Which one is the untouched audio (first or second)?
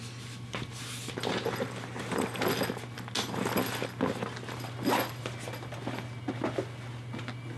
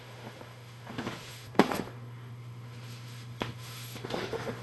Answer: first